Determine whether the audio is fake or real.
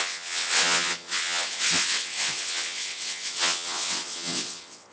fake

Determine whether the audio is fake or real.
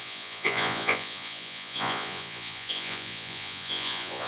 fake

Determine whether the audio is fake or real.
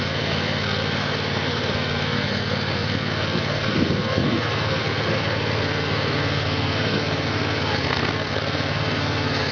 fake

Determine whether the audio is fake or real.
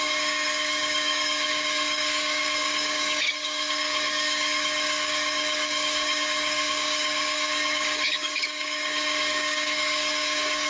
fake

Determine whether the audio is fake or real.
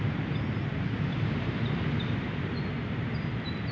real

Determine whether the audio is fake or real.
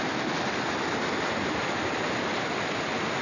real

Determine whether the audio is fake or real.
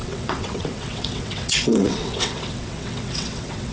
fake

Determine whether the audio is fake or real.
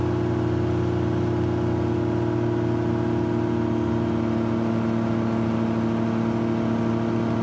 real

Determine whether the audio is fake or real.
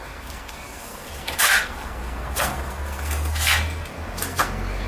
fake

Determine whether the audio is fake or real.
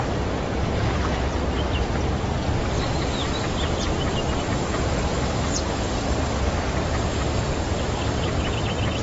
real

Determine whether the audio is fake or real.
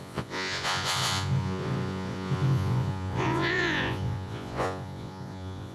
fake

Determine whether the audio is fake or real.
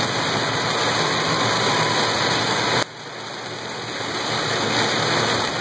real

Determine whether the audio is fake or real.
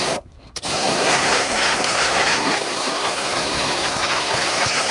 fake